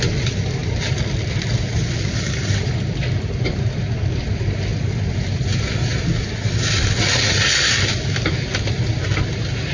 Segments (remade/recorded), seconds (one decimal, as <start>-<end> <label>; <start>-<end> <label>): 0.0-0.6 recorded; 0.6-5.1 remade; 5.1-9.7 recorded